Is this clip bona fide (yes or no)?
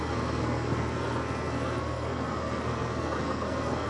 no